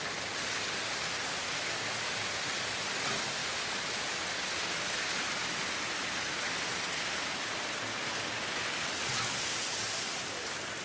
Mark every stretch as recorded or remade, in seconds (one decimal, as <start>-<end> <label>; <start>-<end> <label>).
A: 0.0-3.4 recorded; 3.4-4.2 remade; 4.2-10.8 recorded